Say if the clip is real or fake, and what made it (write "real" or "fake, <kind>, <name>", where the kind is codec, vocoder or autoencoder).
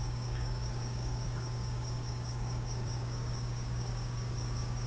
fake, codec, DAC